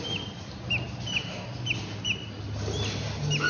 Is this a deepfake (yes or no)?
no